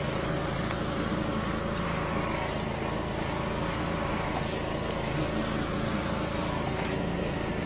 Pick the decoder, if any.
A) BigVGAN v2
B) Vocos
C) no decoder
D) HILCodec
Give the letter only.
C